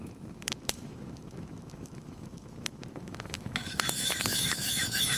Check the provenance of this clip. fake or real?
fake